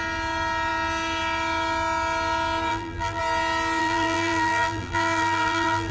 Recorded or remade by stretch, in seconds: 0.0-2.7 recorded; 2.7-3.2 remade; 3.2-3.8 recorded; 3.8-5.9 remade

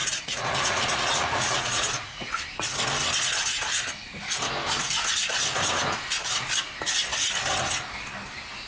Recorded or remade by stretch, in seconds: 0.0-2.3 remade; 2.3-8.7 recorded

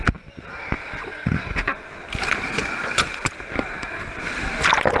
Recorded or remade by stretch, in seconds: 0.0-1.1 recorded; 1.1-1.9 remade; 1.9-2.6 recorded; 2.6-3.3 remade; 3.3-5.0 recorded

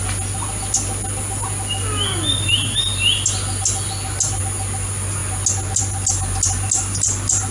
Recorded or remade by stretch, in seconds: 0.0-7.5 recorded

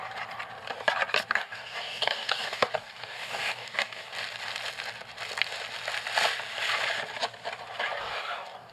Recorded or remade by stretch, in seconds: 0.0-1.3 recorded; 1.3-4.1 remade; 4.1-8.0 recorded; 8.0-8.7 remade

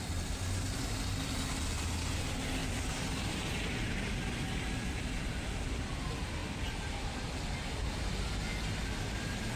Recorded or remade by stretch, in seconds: 0.0-9.6 recorded

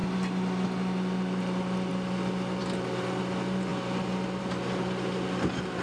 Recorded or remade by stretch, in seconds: 0.0-5.8 recorded